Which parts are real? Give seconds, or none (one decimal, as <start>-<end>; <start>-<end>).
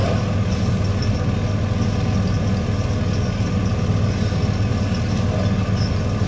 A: 0.0-6.3